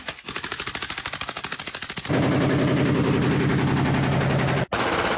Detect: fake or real real